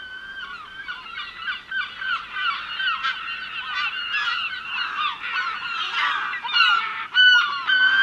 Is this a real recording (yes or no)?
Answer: yes